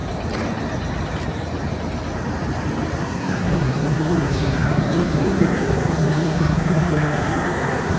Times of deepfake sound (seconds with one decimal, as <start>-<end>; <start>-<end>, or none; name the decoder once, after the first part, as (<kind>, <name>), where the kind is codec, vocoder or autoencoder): 3.0-8.0 (codec, SNAC)